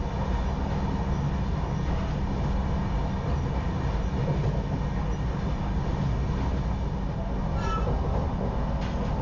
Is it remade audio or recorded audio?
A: recorded